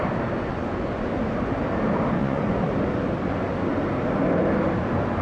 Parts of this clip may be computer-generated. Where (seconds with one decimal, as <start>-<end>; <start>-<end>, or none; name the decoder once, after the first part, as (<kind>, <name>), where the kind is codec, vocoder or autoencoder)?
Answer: 0.5-1.1 (vocoder, Vocos); 2.2-2.7